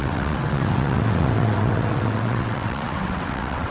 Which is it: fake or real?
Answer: fake